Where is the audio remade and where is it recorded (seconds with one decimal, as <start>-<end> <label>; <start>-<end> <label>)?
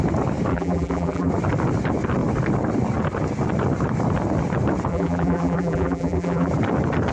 0.0-0.5 recorded; 0.5-1.3 remade; 1.3-4.9 recorded; 4.9-6.5 remade; 6.5-7.1 recorded